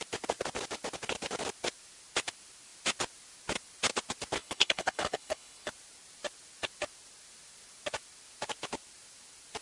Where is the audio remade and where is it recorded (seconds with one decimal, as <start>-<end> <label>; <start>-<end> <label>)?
0.0-4.4 recorded; 4.4-5.7 remade; 5.7-9.6 recorded